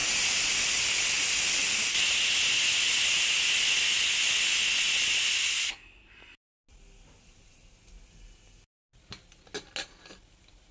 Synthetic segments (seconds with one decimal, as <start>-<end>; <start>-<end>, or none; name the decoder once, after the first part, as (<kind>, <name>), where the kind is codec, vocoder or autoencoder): none